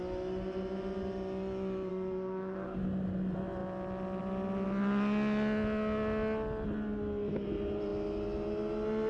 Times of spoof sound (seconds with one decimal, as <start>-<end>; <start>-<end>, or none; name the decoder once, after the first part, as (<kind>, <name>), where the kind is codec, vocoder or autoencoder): 1.9-2.8 (codec, SNAC)